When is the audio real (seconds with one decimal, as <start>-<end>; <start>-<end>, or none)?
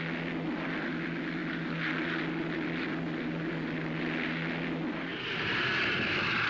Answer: 0.0-5.1